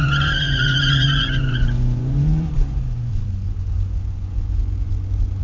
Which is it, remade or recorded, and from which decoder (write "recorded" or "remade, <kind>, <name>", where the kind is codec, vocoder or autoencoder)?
remade, vocoder, Vocos